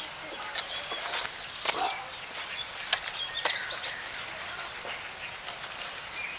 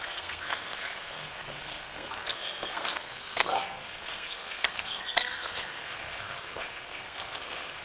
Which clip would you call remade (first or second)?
second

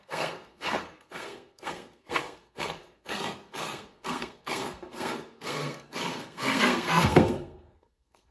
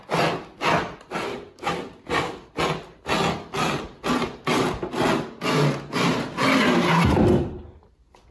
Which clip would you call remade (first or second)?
first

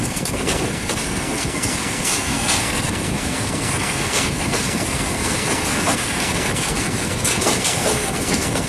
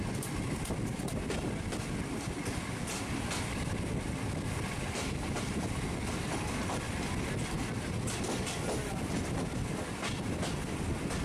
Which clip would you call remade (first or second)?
first